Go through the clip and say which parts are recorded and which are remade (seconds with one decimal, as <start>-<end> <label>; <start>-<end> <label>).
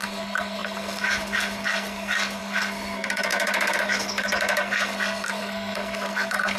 0.0-6.6 remade